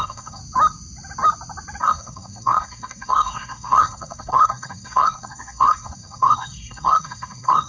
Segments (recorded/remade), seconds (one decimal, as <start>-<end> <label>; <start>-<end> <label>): 0.0-0.4 remade; 0.4-1.8 recorded; 1.8-7.7 remade